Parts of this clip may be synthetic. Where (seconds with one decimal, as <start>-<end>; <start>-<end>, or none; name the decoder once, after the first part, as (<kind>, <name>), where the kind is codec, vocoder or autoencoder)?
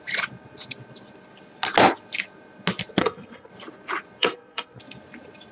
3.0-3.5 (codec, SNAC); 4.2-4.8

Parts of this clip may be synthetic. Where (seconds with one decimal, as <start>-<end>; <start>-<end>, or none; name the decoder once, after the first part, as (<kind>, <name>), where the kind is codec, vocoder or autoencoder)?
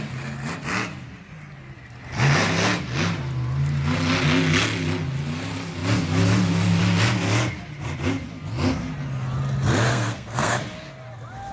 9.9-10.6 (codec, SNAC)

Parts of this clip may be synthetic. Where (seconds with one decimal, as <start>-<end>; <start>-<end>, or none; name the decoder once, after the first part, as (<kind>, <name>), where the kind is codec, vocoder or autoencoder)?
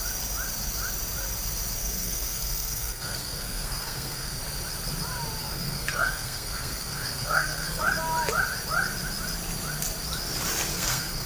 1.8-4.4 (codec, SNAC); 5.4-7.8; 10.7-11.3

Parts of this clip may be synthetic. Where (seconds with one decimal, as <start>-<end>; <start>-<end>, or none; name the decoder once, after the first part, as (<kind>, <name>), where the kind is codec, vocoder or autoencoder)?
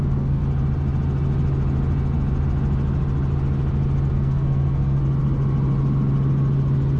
0.0-0.4 (codec, SNAC); 4.1-5.0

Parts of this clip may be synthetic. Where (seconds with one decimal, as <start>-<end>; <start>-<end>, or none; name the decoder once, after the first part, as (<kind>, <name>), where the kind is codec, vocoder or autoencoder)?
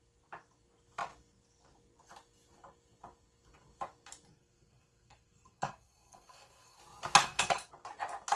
4.3-6.8 (codec, SNAC); 7.2-7.7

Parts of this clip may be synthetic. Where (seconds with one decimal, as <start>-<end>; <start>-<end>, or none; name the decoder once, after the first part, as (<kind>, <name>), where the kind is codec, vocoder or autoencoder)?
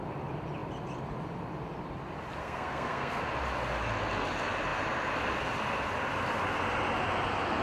2.4-3.2 (codec, SNAC)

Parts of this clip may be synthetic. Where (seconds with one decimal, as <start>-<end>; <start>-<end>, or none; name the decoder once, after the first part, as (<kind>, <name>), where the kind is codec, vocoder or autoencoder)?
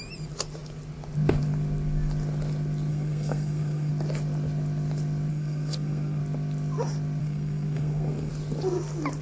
2.9-3.9 (codec, SNAC); 5.3-6.2; 7.2-8.3